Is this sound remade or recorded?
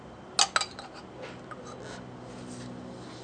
recorded